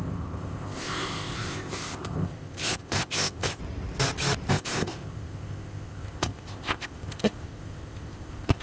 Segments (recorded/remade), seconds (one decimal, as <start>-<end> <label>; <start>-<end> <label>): 0.0-3.6 remade; 3.6-4.5 recorded; 4.5-8.6 remade